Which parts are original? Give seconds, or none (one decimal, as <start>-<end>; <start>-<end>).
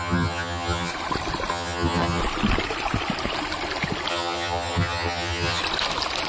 0.9-1.5; 2.2-4.1; 5.6-6.3